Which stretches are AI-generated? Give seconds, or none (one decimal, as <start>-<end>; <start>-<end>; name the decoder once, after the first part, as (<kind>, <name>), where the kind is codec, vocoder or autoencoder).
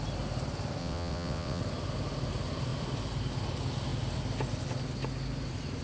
0.8-1.6 (vocoder, WaveNeXt)